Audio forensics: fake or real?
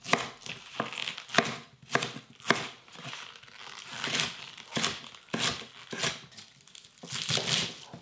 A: real